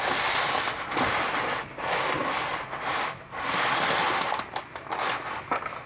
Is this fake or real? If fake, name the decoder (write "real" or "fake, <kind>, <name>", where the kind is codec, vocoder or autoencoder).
real